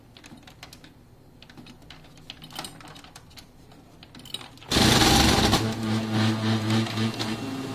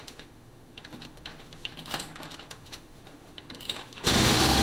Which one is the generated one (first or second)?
second